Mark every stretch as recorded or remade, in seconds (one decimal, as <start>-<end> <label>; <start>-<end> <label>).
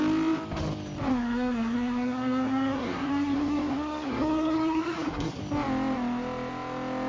0.0-1.1 recorded; 1.1-5.4 remade; 5.4-7.1 recorded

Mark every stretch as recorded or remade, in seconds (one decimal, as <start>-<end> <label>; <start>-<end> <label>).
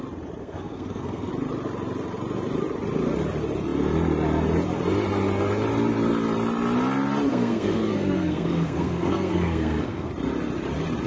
0.0-0.4 recorded; 0.4-1.3 remade; 1.3-7.3 recorded; 7.3-10.1 remade; 10.1-11.1 recorded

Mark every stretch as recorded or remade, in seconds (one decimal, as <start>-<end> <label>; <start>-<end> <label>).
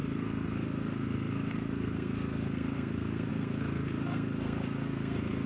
0.0-5.5 remade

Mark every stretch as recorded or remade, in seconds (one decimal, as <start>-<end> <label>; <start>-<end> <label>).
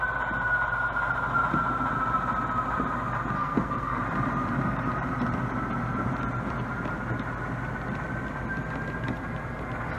0.0-3.4 recorded; 3.4-4.0 remade; 4.0-10.0 recorded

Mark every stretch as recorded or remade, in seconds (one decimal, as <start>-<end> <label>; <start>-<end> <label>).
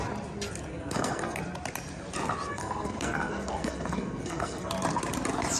0.0-0.7 recorded; 0.7-1.4 remade; 1.4-2.5 recorded; 2.5-4.7 remade; 4.7-5.6 recorded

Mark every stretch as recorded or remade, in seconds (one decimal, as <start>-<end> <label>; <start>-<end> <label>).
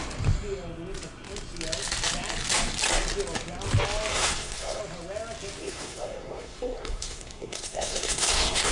0.0-4.1 recorded; 4.1-4.8 remade; 4.8-5.6 recorded; 5.6-8.7 remade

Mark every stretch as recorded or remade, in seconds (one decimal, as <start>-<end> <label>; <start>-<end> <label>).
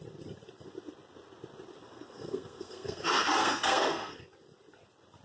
0.0-1.8 recorded; 1.8-4.2 remade; 4.2-5.2 recorded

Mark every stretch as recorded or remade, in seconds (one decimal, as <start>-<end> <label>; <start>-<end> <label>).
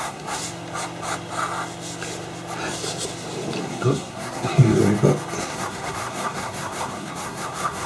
0.0-0.4 remade; 0.4-3.6 recorded; 3.6-4.8 remade; 4.8-5.4 recorded; 5.4-7.9 remade